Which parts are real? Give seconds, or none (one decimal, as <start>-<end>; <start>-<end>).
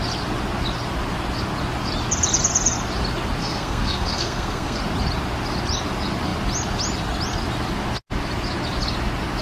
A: 0.0-3.4; 4.8-9.4